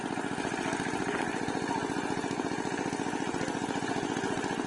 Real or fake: real